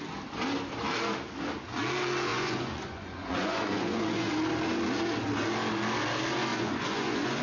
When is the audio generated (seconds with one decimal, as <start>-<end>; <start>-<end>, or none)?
2.3-4.3; 6.5-7.4